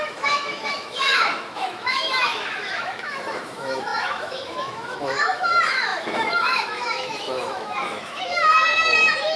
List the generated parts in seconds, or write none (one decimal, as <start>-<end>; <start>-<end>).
0.0-9.4